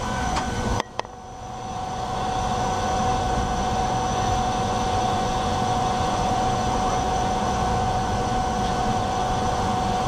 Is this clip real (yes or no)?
no